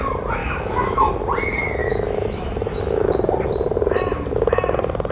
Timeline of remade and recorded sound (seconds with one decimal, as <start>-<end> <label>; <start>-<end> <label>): 0.0-0.4 recorded; 0.4-1.1 remade; 1.1-1.8 recorded; 1.8-3.1 remade; 3.1-5.1 recorded